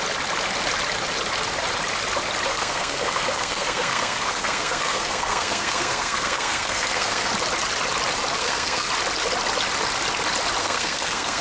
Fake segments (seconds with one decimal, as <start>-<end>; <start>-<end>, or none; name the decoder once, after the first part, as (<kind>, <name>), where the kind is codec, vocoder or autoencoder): 2.5-7.3 (codec, SNAC); 8.4-8.9; 10.6-11.4